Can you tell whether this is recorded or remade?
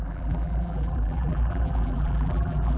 remade